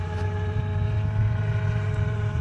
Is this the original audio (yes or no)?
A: no